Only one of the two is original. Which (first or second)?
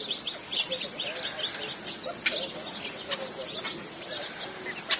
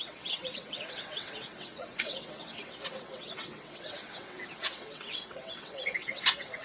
first